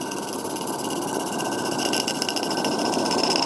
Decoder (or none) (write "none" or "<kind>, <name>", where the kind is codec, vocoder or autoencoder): none